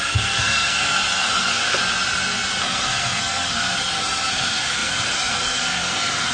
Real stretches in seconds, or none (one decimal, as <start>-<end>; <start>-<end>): 1.8-2.6